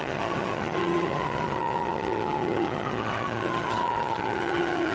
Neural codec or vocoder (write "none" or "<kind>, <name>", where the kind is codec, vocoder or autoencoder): vocoder, HiFi-GAN